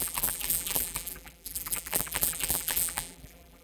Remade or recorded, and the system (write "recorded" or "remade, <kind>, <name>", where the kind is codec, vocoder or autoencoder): remade, vocoder, BigVGAN v2